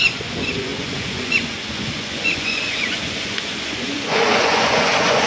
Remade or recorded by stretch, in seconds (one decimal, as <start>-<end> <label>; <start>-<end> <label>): 0.0-5.3 remade